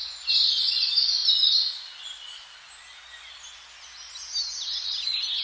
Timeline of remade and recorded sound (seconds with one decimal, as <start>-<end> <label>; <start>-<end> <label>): 0.0-5.4 recorded